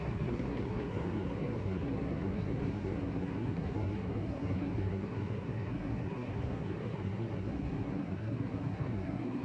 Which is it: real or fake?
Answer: fake